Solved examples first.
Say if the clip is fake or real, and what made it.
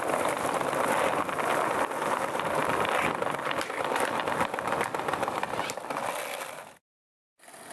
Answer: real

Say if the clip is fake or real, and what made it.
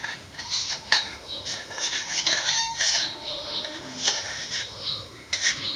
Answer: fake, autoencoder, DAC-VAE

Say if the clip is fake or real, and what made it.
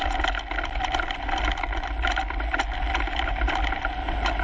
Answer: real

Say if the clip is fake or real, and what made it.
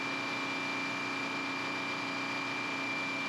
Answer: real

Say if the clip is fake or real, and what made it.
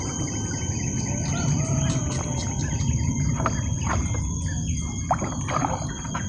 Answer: real